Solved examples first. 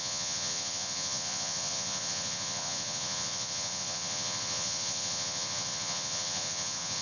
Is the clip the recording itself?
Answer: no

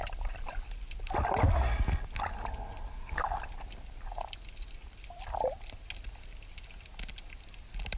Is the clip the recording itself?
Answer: yes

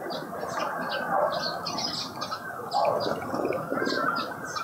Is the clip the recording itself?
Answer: yes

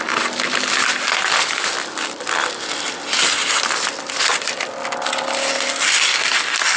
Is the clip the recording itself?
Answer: yes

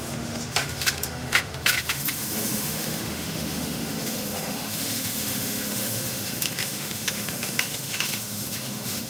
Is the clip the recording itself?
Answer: no